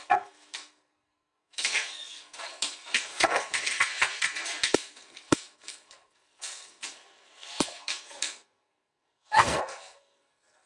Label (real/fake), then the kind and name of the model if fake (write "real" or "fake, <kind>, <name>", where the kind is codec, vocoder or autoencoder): fake, codec, SNAC